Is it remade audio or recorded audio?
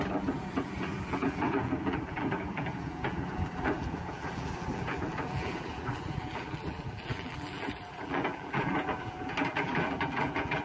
remade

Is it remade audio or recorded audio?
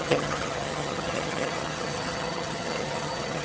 remade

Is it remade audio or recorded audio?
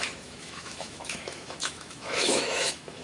remade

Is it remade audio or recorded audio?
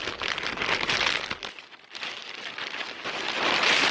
recorded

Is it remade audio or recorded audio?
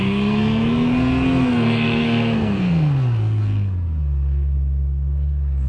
remade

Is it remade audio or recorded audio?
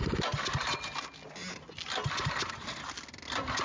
recorded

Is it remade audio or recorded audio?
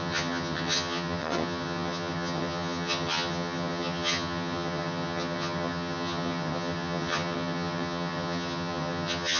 remade